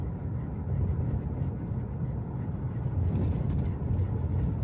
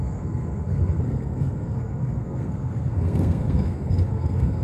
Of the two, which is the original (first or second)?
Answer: first